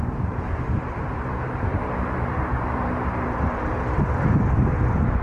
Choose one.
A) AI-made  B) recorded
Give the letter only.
A